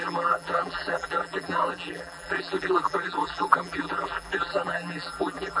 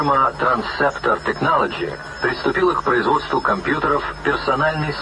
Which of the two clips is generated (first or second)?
first